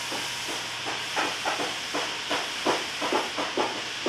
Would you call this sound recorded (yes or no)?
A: yes